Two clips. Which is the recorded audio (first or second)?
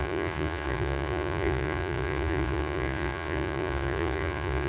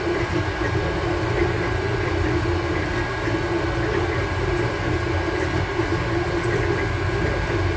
second